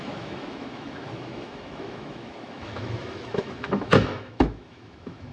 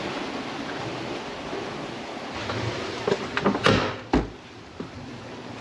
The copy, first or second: first